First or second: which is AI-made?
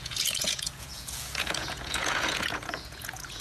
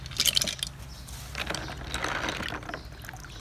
first